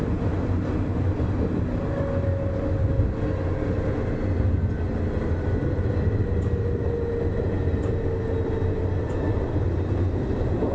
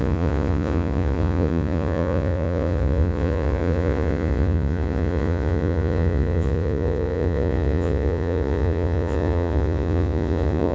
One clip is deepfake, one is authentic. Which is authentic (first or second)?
first